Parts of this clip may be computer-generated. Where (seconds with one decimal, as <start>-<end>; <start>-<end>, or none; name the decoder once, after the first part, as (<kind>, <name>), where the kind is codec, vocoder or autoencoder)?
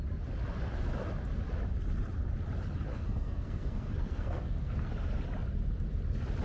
2.9-4.9 (codec, SNAC)